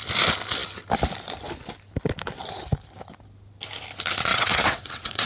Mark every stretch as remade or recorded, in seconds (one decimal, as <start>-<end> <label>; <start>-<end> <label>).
0.0-4.3 recorded; 4.3-5.3 remade